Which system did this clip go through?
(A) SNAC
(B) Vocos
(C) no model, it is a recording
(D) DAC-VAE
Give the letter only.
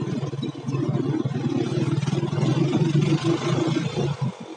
C